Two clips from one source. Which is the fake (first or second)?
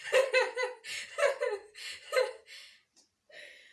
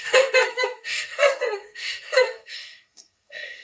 second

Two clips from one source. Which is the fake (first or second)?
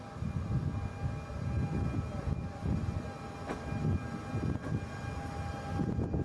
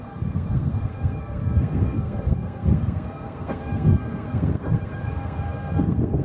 second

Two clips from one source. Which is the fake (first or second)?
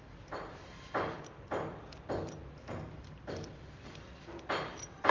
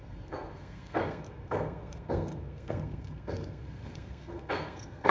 second